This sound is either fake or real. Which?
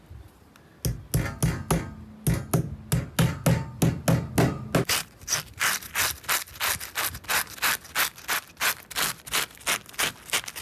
real